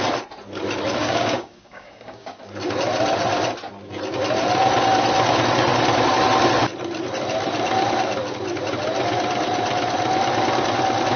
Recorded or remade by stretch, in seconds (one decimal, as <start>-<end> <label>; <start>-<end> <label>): 0.0-1.0 recorded; 1.0-2.4 remade; 2.4-11.2 recorded